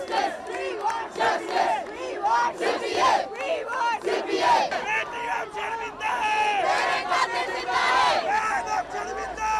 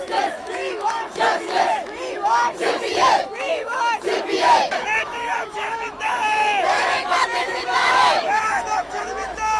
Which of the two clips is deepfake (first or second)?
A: second